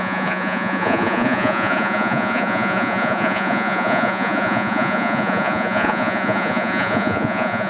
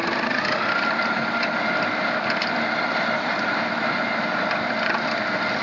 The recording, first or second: second